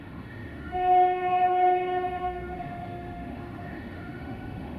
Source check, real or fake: fake